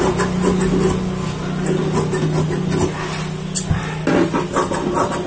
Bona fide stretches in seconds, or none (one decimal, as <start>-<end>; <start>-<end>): 0.0-5.3